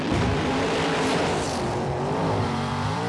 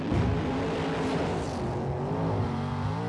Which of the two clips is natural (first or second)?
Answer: second